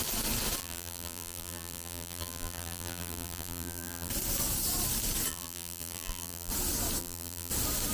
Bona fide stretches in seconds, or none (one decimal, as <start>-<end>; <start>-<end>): 0.0-0.6; 4.1-5.3; 6.5-7.0; 7.5-7.9